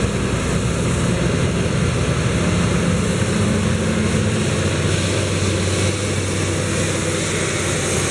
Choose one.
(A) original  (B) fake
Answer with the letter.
A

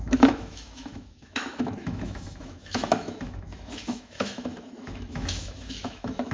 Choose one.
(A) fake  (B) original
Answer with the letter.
A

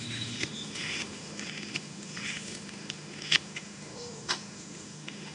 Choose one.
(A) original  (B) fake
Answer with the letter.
B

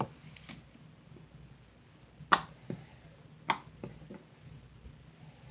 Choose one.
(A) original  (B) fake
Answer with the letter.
A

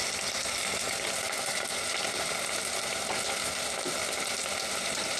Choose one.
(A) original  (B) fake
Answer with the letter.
A